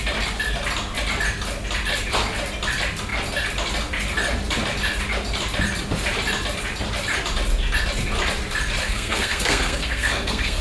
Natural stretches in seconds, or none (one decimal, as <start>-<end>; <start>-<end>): 0.0-8.8